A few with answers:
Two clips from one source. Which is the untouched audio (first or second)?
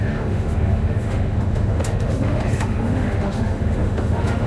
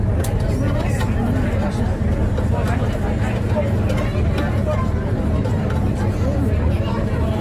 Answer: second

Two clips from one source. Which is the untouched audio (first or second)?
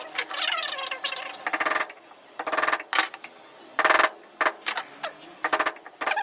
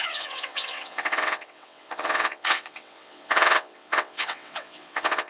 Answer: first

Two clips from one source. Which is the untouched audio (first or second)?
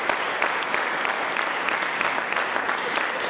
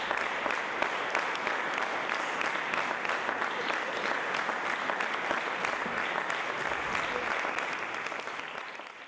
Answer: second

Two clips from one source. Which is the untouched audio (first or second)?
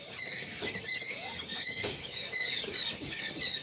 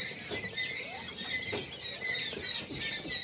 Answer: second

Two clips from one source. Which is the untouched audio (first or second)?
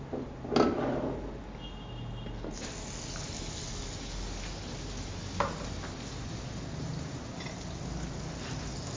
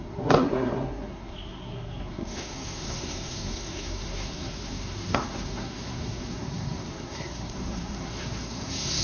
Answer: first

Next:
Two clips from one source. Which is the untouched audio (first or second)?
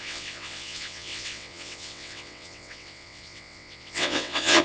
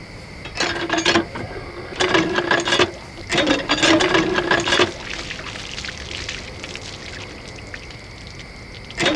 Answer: second